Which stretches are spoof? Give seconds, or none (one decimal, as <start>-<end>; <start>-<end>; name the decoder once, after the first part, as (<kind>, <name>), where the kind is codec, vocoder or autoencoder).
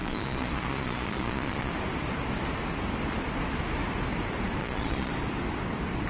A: 0.0-1.7 (vocoder, Vocos); 4.6-5.1